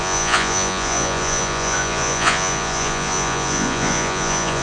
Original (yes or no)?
no